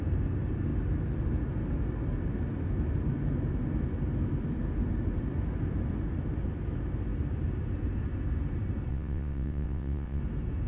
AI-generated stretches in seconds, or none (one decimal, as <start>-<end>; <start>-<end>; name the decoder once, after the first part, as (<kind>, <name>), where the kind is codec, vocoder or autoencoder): 8.9-10.2 (vocoder, WaveNeXt)